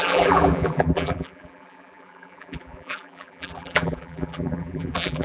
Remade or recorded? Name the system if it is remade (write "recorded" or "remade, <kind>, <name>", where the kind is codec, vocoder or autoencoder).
remade, vocoder, BigVGAN v2